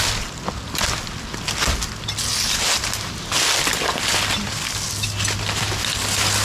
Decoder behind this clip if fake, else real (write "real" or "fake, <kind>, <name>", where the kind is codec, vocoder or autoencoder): real